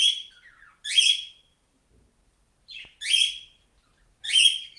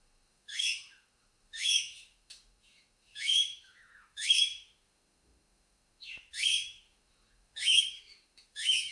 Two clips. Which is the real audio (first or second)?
first